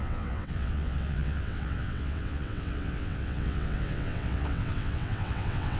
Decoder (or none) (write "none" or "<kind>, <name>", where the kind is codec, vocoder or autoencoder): vocoder, WaveNeXt